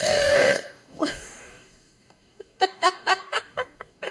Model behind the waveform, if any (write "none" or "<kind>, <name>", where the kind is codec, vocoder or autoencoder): codec, DAC